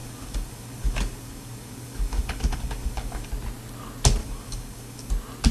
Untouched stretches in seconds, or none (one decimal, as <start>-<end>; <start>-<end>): 3.3-4.2; 5.1-5.5